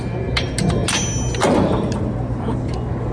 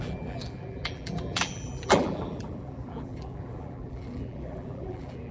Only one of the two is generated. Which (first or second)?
second